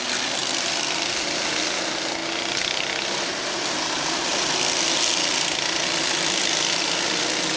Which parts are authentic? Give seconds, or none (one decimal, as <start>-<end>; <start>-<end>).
0.0-7.6